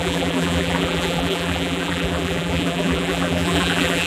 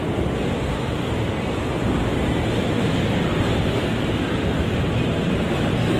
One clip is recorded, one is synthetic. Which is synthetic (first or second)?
first